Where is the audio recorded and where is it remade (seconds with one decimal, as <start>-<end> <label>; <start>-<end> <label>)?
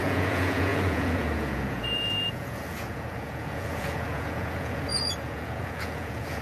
0.0-6.4 remade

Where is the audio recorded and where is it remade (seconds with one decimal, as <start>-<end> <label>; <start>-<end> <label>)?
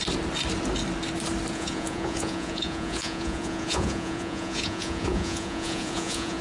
0.0-1.5 recorded; 1.5-6.4 remade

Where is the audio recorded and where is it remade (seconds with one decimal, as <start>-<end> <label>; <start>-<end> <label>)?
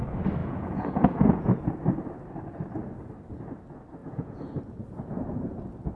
0.0-0.4 recorded; 0.4-1.5 remade; 1.5-4.0 recorded; 4.0-4.6 remade; 4.6-6.0 recorded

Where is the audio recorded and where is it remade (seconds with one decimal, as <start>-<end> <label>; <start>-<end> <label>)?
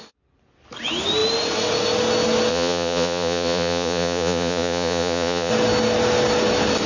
0.0-2.5 recorded; 2.5-5.5 remade; 5.5-6.9 recorded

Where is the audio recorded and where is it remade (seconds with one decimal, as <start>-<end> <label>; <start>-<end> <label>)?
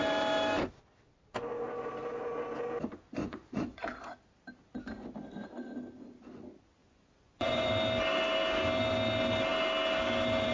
0.0-3.2 recorded; 3.2-3.8 remade; 3.8-6.8 recorded; 6.8-7.7 remade; 7.7-10.5 recorded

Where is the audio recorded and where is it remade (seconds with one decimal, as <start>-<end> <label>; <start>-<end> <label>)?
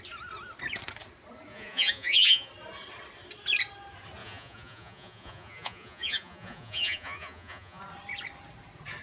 0.0-1.5 recorded; 1.5-2.5 remade; 2.5-4.2 recorded; 4.2-7.8 remade; 7.8-9.0 recorded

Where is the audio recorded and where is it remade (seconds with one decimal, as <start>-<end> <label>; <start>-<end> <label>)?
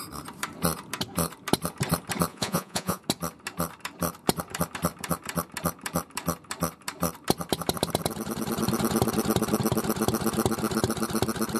0.0-2.3 recorded; 2.3-3.0 remade; 3.0-11.6 recorded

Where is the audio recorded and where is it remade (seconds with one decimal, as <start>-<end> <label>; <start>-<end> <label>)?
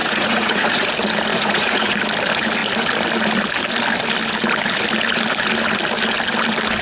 0.0-0.9 remade; 0.9-1.3 recorded; 1.3-1.9 remade; 1.9-6.8 recorded